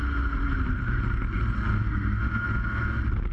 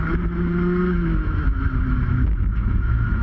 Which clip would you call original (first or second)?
first